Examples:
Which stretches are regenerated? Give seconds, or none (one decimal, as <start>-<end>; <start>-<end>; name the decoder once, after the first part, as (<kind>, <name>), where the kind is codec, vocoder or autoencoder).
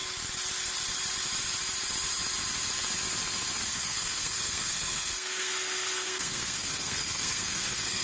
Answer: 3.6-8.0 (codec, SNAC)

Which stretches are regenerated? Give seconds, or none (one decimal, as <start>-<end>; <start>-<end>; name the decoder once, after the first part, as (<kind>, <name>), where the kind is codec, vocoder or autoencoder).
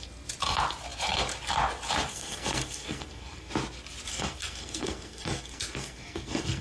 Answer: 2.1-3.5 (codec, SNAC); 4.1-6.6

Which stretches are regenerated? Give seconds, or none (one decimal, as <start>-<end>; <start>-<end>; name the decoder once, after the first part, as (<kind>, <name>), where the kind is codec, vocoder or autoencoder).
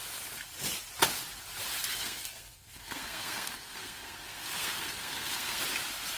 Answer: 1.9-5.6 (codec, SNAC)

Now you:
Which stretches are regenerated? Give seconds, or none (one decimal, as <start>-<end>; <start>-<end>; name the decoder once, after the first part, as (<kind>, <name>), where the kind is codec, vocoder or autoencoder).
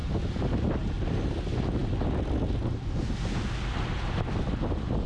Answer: none